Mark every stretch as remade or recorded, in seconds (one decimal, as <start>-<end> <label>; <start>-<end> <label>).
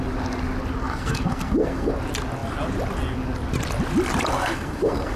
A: 0.0-0.8 recorded; 0.8-1.9 remade; 1.9-4.3 recorded; 4.3-5.2 remade